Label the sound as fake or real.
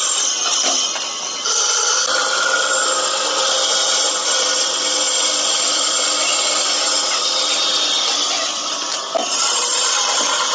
fake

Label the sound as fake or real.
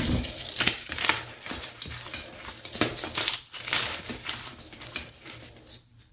fake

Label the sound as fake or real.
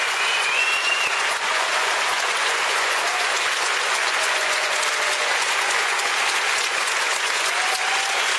fake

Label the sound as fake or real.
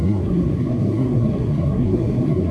fake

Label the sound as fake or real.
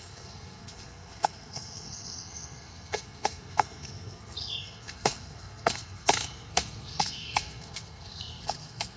fake